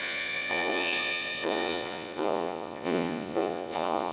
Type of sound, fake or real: fake